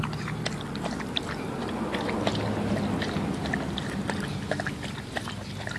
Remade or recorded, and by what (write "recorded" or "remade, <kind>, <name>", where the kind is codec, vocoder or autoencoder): recorded